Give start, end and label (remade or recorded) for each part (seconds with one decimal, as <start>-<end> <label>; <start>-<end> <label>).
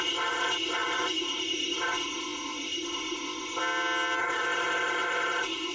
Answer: 0.0-3.6 remade; 3.6-4.2 recorded; 4.2-5.7 remade